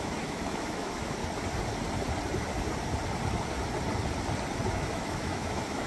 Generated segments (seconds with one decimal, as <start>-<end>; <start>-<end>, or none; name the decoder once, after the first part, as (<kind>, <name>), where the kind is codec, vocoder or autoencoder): 0.0-1.2 (autoencoder, DAC-VAE); 4.7-5.9